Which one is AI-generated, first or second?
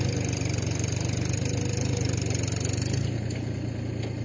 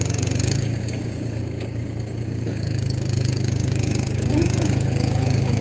second